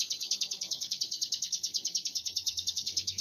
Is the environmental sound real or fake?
fake